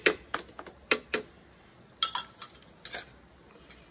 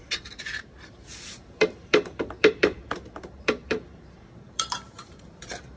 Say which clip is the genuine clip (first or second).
first